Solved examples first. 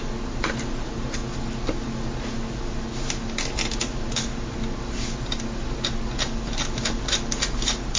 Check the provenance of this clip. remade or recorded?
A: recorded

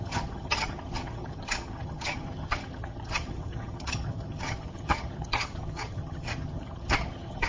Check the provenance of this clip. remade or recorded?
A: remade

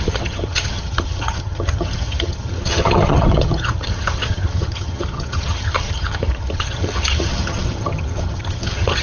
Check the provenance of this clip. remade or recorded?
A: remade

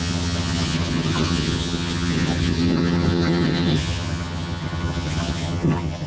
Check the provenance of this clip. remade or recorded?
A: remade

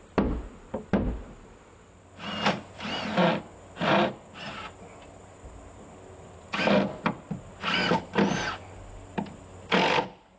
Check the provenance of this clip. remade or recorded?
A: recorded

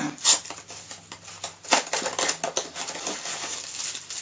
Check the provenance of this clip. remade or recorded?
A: recorded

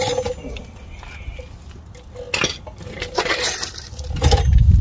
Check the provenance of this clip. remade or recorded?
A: recorded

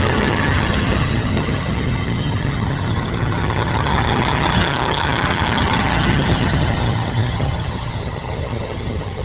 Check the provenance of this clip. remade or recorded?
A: remade